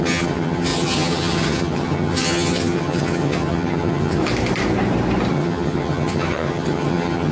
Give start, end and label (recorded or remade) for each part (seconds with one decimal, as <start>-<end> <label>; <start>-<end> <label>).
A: 0.0-4.2 remade; 4.2-5.3 recorded; 5.3-7.3 remade